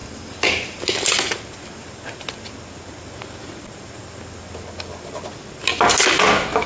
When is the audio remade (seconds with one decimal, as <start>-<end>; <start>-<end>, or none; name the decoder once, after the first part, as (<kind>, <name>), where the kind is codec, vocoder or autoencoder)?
none

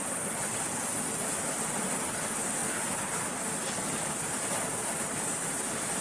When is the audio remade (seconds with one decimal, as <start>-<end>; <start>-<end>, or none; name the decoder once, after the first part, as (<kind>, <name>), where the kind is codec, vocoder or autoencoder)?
0.0-2.6 (vocoder, BigVGAN v2); 3.4-6.0

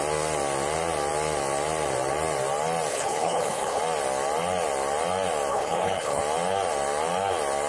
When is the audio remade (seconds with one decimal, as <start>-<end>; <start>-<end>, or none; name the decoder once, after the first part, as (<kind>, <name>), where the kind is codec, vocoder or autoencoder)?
2.9-3.8 (codec, HILCodec); 5.5-6.2

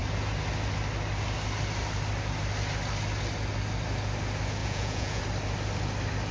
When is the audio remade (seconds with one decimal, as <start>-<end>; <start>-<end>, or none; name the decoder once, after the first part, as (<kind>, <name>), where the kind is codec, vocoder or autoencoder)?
4.6-5.2 (vocoder, Vocos)

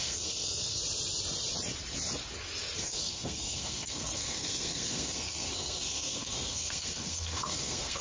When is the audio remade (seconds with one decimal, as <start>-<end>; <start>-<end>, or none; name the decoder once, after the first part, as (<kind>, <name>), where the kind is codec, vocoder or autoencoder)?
0.0-0.8 (codec, SNAC); 2.8-8.0